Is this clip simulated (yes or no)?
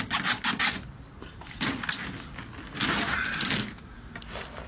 no